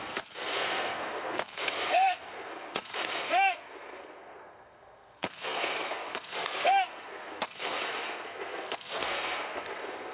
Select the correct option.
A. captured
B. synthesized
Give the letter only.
B